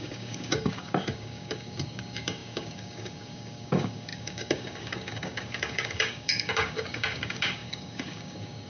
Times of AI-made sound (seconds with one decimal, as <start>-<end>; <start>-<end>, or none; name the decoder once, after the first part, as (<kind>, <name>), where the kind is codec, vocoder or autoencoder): 0.0-8.7 (codec, DAC)